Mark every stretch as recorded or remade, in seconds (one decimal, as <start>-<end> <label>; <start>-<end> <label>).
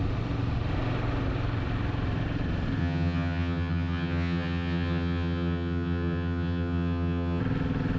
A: 0.0-2.8 recorded; 2.8-7.4 remade; 7.4-8.0 recorded